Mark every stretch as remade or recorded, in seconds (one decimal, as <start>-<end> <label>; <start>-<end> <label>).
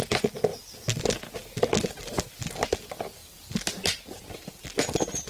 0.0-5.3 recorded